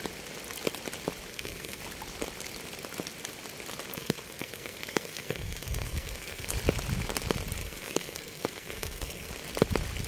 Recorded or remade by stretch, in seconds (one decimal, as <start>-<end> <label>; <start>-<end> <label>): 0.0-1.3 recorded; 1.3-1.8 remade; 1.8-3.9 recorded; 3.9-6.5 remade; 6.5-7.6 recorded; 7.6-9.3 remade; 9.3-10.1 recorded